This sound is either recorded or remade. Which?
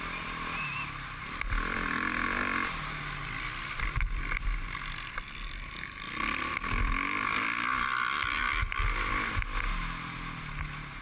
recorded